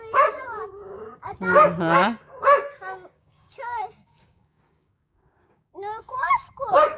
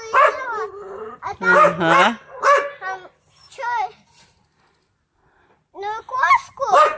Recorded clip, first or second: second